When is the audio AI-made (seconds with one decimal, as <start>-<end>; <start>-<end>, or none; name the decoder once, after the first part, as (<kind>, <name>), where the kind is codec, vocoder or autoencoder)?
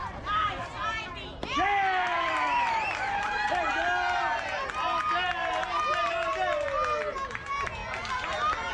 2.0-3.7 (vocoder, BigVGAN v2); 5.4-6.1